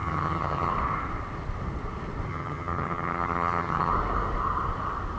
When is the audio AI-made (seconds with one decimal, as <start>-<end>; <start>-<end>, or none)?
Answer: 0.0-0.7; 2.3-3.9